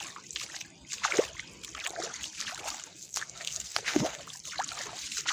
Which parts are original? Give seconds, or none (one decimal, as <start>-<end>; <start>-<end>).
0.0-2.9; 4.2-5.3